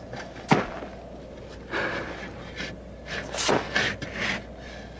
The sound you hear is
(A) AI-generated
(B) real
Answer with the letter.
B